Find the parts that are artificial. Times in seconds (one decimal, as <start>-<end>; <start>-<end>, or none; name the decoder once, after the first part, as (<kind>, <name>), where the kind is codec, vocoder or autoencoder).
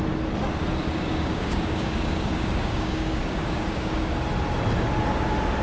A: 0.8-4.2 (codec, DAC)